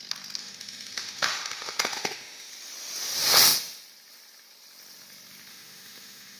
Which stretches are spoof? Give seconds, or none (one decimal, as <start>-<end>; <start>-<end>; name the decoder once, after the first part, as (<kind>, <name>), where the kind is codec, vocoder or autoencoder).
0.4-2.5 (autoencoder, DAC-VAE); 5.5-6.4